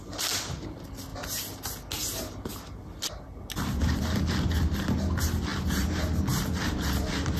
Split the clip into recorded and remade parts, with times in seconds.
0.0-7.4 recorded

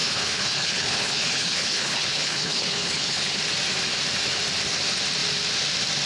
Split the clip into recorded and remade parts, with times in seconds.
0.0-3.4 remade; 3.4-6.1 recorded

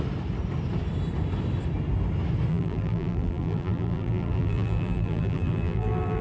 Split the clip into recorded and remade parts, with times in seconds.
0.0-2.5 recorded; 2.5-6.2 remade

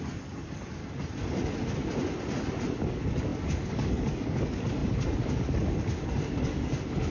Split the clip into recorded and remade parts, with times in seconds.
0.0-0.8 remade; 0.8-2.9 recorded; 2.9-7.1 remade

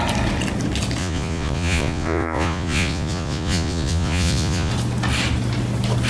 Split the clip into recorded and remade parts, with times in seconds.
0.0-1.0 recorded; 1.0-4.7 remade; 4.7-6.1 recorded